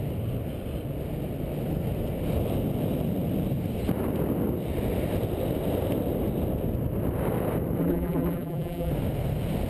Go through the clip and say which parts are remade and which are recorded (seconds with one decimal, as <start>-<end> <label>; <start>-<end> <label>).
0.0-7.8 recorded; 7.8-8.9 remade; 8.9-9.7 recorded